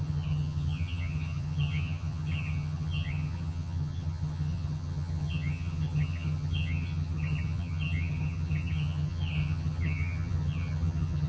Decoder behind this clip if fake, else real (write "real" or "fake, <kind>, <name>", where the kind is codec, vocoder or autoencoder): fake, vocoder, HiFi-GAN